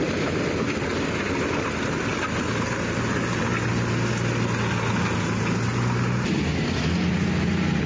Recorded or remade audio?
recorded